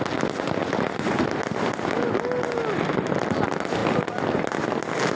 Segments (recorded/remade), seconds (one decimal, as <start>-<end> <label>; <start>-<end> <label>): 0.0-0.6 recorded; 0.6-1.2 remade; 1.2-5.2 recorded